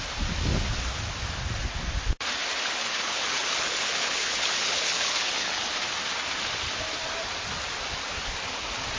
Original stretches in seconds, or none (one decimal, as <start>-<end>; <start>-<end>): 0.0-2.8; 5.7-9.0

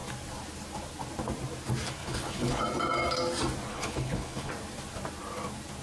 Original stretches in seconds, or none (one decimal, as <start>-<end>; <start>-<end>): 0.0-2.0; 2.6-3.7; 4.5-5.8

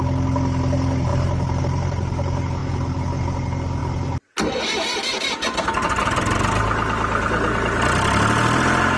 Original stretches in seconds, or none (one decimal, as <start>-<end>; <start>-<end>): 0.0-9.0

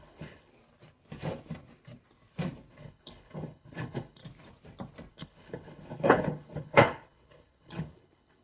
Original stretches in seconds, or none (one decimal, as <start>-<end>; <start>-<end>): 0.5-2.7; 4.2-5.1

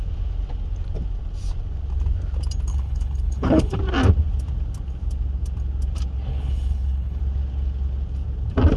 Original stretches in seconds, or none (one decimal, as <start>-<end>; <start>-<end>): 0.0-2.7; 3.8-6.3; 7.2-8.8